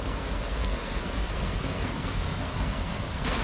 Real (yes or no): no